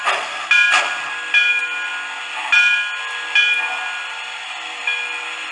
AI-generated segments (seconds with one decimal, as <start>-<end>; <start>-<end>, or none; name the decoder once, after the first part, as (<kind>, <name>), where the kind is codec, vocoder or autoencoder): none